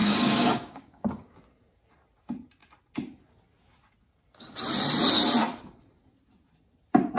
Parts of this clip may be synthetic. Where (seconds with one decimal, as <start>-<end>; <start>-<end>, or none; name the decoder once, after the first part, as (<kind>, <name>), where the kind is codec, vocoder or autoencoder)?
0.0-1.4 (codec, DAC)